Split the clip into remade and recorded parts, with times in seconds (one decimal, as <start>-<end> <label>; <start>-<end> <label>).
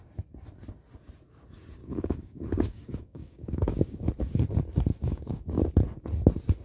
0.0-1.8 recorded; 1.8-4.1 remade; 4.1-4.9 recorded; 4.9-5.7 remade; 5.7-6.6 recorded